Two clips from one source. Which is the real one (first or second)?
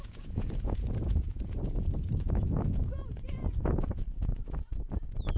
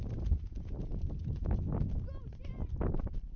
second